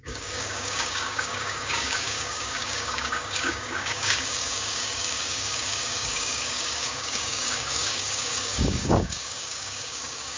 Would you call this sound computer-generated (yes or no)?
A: yes